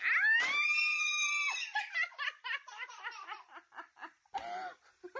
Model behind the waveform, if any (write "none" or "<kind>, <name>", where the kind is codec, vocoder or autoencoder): vocoder, BigVGAN v2